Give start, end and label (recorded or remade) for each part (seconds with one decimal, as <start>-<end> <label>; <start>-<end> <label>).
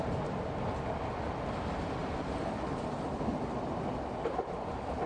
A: 0.0-5.1 recorded